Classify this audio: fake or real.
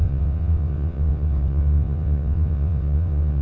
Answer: fake